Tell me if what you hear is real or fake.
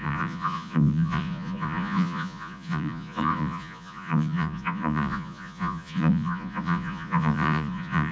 fake